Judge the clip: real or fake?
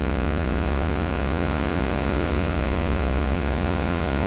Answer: fake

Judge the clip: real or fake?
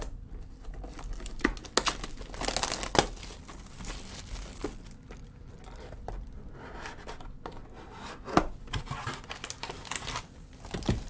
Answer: real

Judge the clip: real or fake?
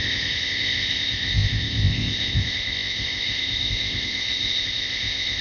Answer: fake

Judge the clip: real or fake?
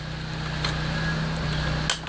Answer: real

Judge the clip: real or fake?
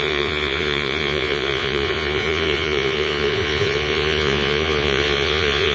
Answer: fake